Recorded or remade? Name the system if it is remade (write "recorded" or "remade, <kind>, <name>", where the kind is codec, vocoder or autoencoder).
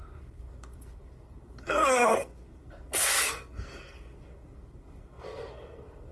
remade, codec, SNAC